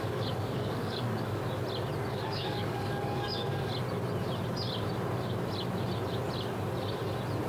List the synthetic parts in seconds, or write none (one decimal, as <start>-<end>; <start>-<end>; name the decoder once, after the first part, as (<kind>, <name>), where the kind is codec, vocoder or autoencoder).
0.0-1.4 (codec, DAC); 2.1-3.7